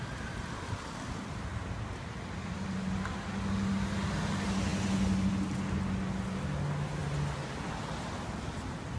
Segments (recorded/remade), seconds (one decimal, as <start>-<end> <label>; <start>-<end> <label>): 0.0-9.0 recorded